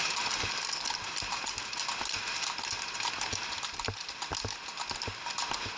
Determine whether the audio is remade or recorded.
recorded